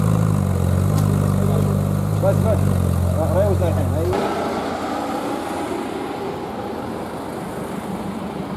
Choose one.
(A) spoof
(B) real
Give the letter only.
B